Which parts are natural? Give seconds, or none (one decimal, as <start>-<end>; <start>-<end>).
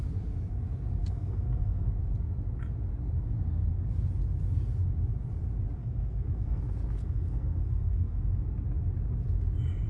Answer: 0.0-1.0; 1.9-5.8; 6.6-7.0; 8.4-9.9